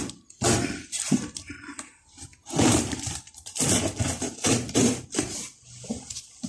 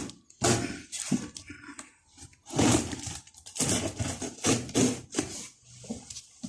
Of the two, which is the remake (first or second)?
first